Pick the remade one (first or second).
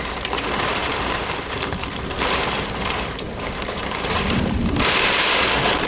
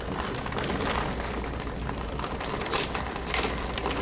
first